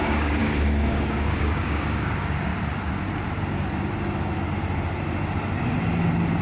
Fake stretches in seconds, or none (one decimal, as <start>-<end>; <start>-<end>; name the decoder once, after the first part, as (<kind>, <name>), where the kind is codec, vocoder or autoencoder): 0.0-2.5 (codec, DAC)